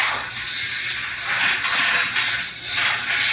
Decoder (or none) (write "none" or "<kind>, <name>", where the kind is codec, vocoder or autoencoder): none